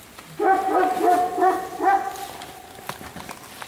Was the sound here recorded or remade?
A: recorded